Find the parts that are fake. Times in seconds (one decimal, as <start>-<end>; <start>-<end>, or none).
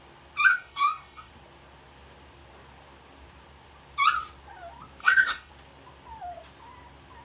0.5-1.3; 5.0-5.5